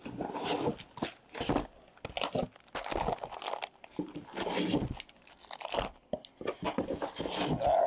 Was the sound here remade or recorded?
recorded